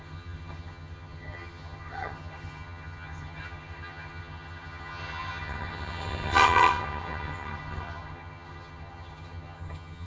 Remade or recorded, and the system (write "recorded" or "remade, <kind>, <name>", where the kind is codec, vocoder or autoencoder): remade, vocoder, HiFi-GAN